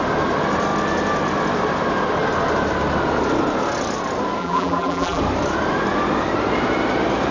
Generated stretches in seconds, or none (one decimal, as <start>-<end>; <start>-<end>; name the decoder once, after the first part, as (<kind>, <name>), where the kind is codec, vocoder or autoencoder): 4.4-5.2 (vocoder, BigVGAN v2)